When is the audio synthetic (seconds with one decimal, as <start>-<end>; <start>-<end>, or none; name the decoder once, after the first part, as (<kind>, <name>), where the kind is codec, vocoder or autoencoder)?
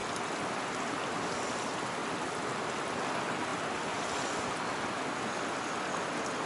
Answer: 0.0-0.6 (vocoder, BigVGAN v2)